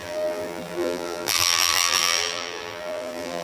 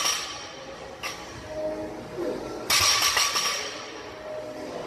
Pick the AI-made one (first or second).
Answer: first